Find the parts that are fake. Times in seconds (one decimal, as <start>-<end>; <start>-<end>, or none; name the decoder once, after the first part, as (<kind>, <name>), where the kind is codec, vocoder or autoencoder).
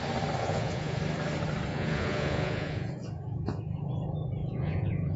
0.4-1.0 (vocoder, Vocos); 1.7-3.9; 4.4-5.2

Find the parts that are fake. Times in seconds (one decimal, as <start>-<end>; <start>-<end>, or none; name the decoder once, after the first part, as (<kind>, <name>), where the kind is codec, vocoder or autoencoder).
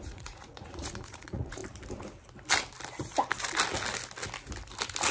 0.0-1.6 (vocoder, Vocos)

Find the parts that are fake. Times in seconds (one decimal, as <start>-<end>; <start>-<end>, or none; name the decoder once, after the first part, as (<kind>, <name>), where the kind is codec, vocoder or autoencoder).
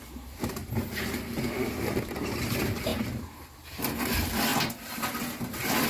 0.0-0.6 (vocoder, BigVGAN v2); 1.4-2.9; 3.7-4.5; 5.2-5.9